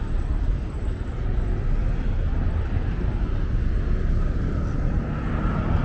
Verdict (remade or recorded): recorded